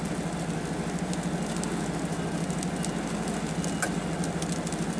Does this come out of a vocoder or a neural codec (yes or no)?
no